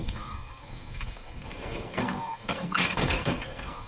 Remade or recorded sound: remade